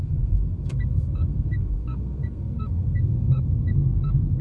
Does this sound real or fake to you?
fake